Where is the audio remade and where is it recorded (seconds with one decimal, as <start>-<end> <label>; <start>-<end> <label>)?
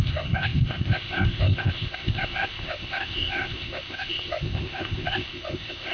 0.0-5.9 remade